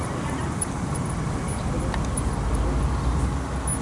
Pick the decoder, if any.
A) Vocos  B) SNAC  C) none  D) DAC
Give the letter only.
C